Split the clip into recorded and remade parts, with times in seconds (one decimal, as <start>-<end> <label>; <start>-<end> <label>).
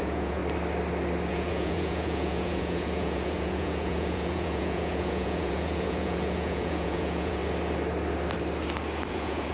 0.0-0.4 remade; 0.4-1.3 recorded; 1.3-7.4 remade; 7.4-9.1 recorded; 9.1-9.5 remade